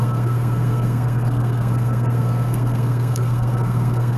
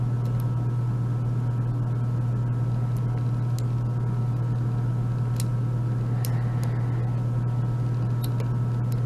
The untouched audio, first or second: second